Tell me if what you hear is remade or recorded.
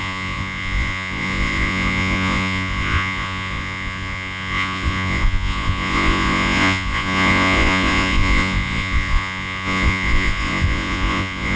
remade